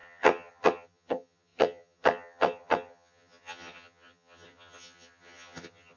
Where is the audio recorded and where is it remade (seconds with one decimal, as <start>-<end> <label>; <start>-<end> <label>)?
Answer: 0.0-6.0 remade